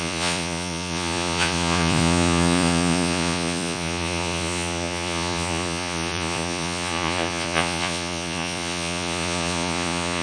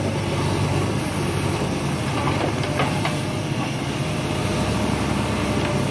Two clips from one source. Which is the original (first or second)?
second